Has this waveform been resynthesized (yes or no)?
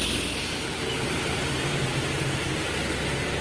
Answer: no